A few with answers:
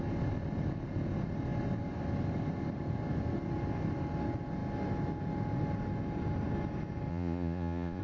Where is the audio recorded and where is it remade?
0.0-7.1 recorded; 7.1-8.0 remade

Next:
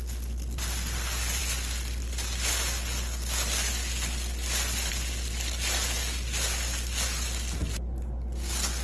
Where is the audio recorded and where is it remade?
0.0-8.8 recorded

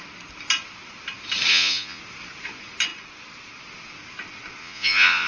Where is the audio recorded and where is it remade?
0.0-1.5 recorded; 1.5-2.0 remade; 2.0-4.6 recorded; 4.6-5.3 remade

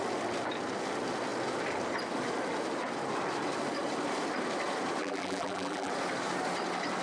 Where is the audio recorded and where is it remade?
0.0-5.0 recorded; 5.0-5.9 remade; 5.9-7.0 recorded

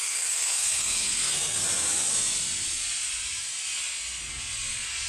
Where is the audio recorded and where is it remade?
0.0-1.6 remade; 1.6-5.1 recorded

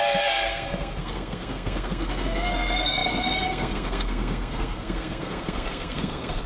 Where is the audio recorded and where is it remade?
0.0-6.5 remade

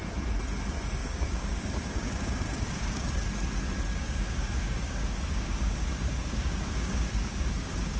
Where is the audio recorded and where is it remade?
0.0-1.0 recorded; 1.0-3.1 remade; 3.1-3.9 recorded; 3.9-8.0 remade

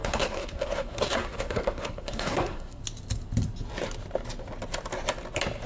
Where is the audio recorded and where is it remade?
0.0-2.8 remade; 2.8-5.7 recorded